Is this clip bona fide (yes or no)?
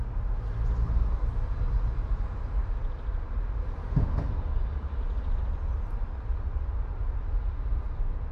yes